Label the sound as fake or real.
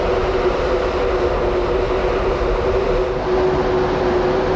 real